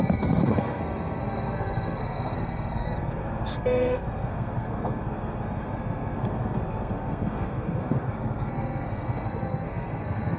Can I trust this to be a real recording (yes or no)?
no